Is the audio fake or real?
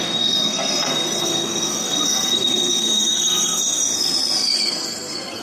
fake